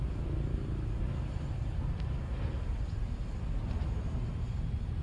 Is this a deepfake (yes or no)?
no